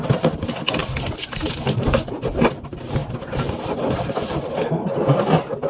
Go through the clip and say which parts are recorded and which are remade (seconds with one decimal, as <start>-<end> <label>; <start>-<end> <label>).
0.0-0.8 recorded; 0.8-1.5 remade; 1.5-5.7 recorded